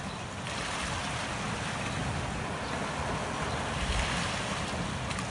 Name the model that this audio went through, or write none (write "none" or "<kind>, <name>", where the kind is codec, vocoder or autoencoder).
none